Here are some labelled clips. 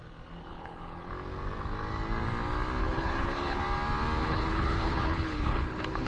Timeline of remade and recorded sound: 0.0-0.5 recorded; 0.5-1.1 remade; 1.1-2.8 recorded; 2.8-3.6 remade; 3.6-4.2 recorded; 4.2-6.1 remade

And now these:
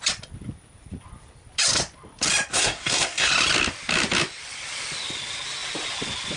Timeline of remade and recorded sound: 0.0-2.5 recorded; 2.5-3.3 remade; 3.3-6.4 recorded

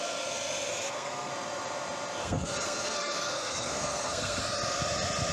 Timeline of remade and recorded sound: 0.0-0.7 recorded; 0.7-1.3 remade; 1.3-2.2 recorded; 2.2-4.4 remade; 4.4-5.3 recorded

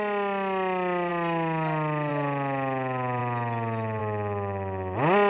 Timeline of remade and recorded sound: 0.0-5.3 recorded

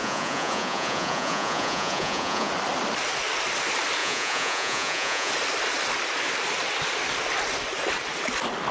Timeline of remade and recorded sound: 0.0-2.5 remade; 2.5-4.0 recorded; 4.0-5.3 remade; 5.3-8.7 recorded